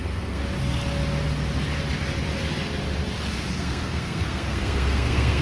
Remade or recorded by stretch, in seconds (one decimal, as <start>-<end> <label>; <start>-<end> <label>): 0.0-0.4 remade; 0.4-3.6 recorded; 3.6-5.4 remade